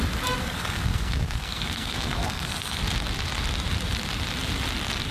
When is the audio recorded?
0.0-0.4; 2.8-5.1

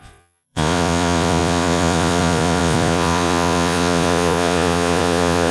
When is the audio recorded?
none

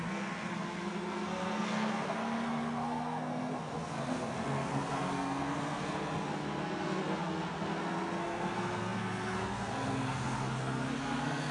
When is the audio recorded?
none

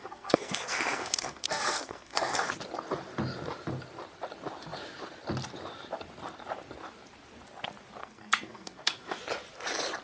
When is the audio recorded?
2.5-8.0; 9.2-10.0

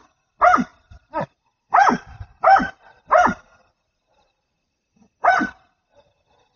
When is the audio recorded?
0.0-6.6

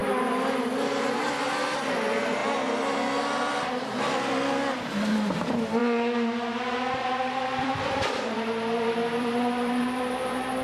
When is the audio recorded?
0.0-1.3; 2.4-3.5; 5.8-7.0